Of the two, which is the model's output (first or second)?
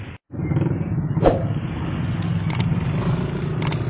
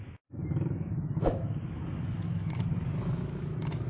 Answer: second